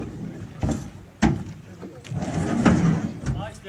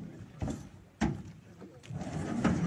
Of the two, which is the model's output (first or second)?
second